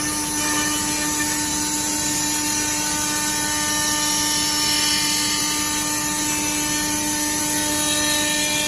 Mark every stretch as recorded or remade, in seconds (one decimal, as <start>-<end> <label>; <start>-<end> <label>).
0.0-8.7 recorded